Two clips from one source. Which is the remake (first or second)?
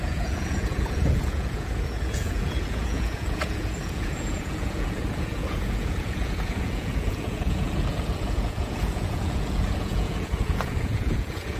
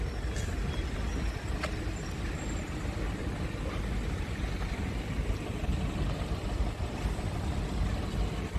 first